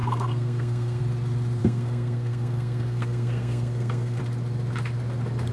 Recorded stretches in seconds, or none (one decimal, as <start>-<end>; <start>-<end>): 1.0-1.6; 4.2-5.5